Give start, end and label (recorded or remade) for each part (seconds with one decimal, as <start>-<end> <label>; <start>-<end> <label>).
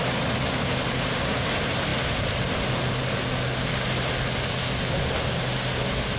0.0-6.2 recorded